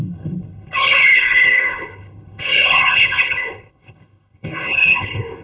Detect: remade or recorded remade